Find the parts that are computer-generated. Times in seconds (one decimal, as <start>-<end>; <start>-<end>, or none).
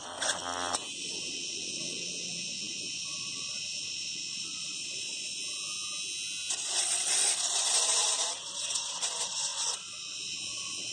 0.0-0.4; 0.9-5.4; 6.5-10.9